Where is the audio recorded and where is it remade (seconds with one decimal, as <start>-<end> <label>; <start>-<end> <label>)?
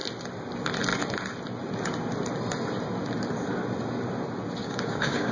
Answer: 0.0-4.6 recorded; 4.6-5.3 remade